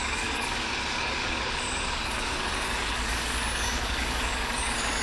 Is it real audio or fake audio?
fake